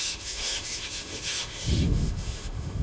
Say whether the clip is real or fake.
fake